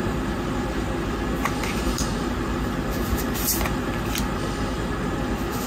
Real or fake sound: real